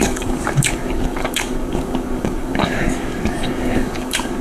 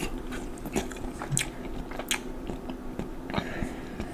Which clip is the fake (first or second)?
first